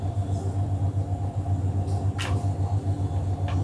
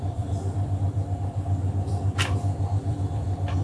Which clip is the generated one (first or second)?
second